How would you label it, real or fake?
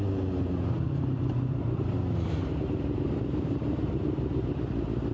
fake